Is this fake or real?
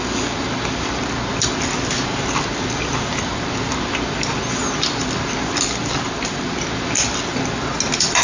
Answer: real